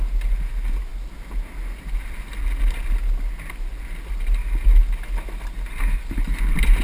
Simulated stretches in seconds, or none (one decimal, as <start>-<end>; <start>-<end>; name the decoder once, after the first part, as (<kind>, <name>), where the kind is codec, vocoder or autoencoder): none